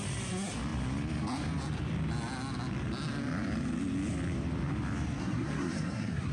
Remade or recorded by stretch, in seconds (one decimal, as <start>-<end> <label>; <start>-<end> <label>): 0.0-5.2 recorded; 5.2-6.3 remade